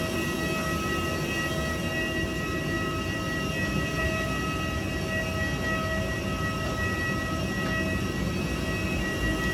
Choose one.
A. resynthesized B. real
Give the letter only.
B